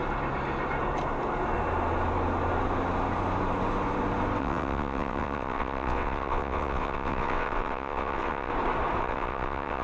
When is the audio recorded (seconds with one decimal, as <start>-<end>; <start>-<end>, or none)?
0.0-4.4; 8.5-9.0